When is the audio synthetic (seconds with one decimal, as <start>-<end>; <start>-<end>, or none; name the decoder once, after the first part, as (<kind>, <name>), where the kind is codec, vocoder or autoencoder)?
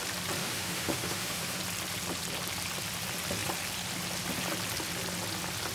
0.4-1.6 (autoencoder, DAC-VAE)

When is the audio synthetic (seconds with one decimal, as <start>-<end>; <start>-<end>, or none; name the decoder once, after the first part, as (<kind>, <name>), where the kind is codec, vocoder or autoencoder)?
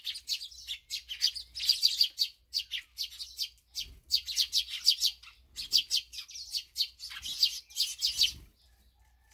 none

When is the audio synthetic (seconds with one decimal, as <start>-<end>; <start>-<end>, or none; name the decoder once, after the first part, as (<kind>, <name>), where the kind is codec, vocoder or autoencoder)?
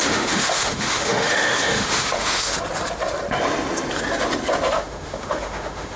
0.0-2.5 (autoencoder, DAC-VAE); 4.7-6.0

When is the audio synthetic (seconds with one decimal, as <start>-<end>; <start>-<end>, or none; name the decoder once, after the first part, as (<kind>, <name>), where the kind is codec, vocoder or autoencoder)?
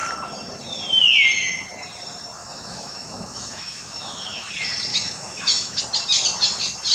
2.4-4.5 (autoencoder, DAC-VAE); 4.9-5.8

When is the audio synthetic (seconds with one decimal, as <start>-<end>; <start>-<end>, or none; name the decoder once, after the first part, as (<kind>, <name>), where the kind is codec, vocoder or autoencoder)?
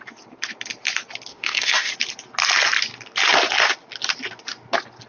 1.3-1.9 (autoencoder, DAC-VAE)